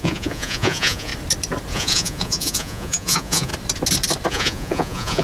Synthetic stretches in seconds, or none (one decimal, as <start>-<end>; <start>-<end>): 0.0-1.1; 1.7-3.5; 4.3-5.2